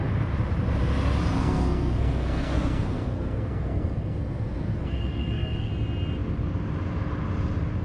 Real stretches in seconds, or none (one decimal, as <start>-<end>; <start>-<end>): 0.0-1.3; 5.7-7.8